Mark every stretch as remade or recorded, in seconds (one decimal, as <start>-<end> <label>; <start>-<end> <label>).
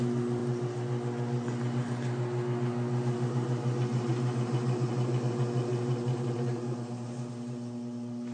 0.0-8.3 recorded